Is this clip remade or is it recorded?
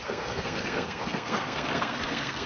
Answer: remade